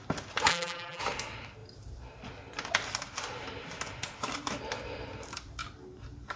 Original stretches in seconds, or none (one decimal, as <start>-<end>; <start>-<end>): 0.0-0.5; 1.0-6.4